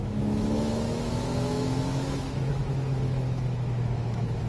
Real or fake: fake